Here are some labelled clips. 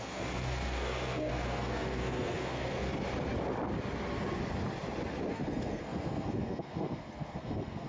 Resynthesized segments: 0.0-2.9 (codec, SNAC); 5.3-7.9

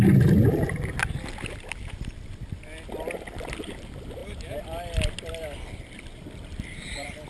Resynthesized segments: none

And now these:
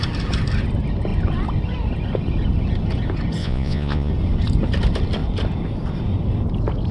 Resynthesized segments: 3.4-4.1 (vocoder, Vocos)